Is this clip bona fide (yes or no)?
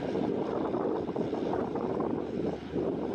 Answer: no